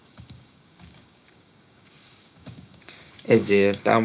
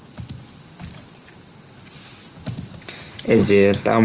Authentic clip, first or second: second